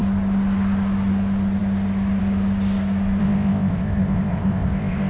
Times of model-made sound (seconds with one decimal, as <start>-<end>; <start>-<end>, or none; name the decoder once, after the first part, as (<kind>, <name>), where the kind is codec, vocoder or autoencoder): 3.2-5.1 (codec, ZipCodec)